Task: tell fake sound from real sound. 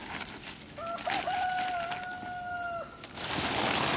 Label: real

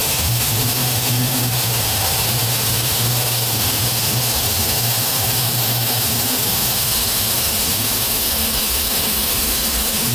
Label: fake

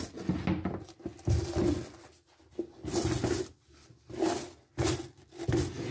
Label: real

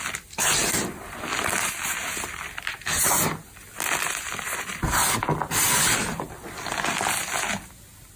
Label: real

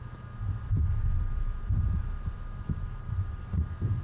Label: fake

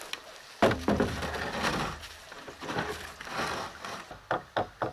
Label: real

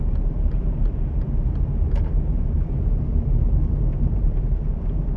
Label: fake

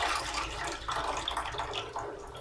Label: real